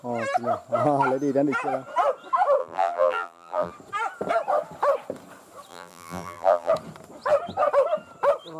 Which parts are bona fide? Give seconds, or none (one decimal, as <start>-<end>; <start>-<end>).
0.0-2.6; 3.7-5.7; 6.7-8.6